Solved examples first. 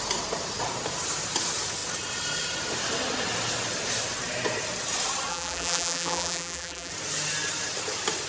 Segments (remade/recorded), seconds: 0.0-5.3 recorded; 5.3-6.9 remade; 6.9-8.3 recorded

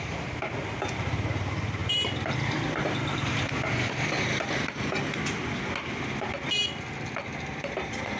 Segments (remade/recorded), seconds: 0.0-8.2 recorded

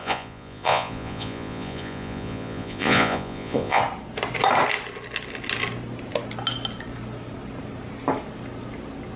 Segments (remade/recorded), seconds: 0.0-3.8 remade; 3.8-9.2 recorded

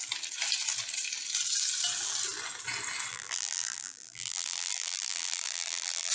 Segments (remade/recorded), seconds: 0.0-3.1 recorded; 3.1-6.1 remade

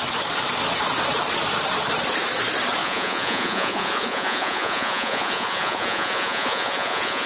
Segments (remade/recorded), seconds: 0.0-2.8 recorded; 2.8-7.3 remade

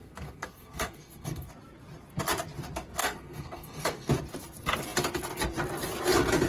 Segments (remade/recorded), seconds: 0.0-1.5 remade; 1.5-3.0 recorded; 3.0-4.1 remade; 4.1-6.5 recorded